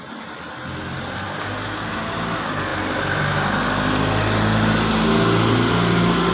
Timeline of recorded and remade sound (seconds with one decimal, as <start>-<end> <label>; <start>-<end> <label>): 0.0-6.3 recorded